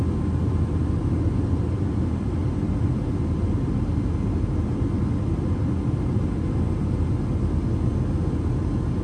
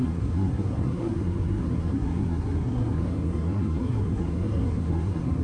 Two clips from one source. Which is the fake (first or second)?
second